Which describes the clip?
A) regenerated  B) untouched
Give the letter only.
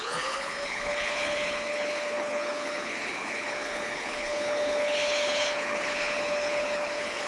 A